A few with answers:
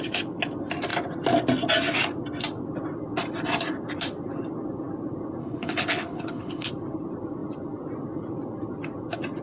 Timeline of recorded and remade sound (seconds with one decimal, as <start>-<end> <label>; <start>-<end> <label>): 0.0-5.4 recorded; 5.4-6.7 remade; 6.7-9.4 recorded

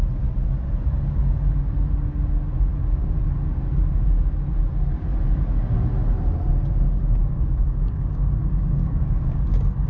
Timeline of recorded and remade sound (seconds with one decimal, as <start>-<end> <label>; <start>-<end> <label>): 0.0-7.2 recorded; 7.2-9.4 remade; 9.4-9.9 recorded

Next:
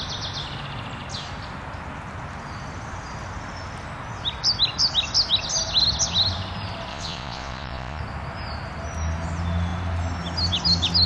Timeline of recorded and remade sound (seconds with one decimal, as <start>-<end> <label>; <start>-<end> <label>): 0.0-6.9 recorded; 6.9-8.0 remade; 8.0-11.1 recorded